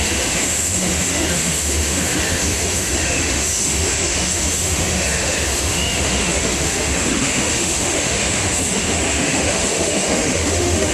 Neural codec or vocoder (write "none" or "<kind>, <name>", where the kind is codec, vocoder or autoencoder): autoencoder, DAC-VAE